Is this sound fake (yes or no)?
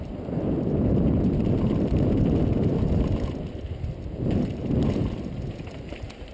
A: yes